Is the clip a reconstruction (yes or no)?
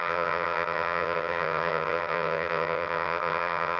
yes